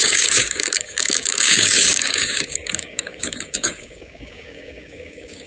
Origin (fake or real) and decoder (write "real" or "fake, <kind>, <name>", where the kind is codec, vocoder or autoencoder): fake, codec, DAC